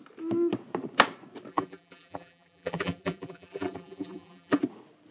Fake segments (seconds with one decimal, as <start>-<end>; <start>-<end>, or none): 1.5-4.6